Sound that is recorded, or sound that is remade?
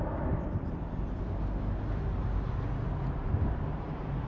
remade